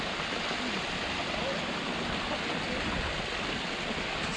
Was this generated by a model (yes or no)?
no